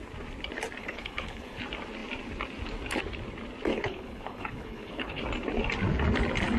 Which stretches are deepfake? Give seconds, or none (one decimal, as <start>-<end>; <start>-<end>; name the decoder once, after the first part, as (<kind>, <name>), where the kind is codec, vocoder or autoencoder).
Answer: 0.8-1.6 (codec, HILCodec); 3.7-5.2